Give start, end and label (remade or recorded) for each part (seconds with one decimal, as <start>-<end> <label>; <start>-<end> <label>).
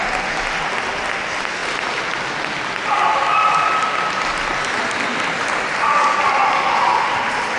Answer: 0.0-7.6 recorded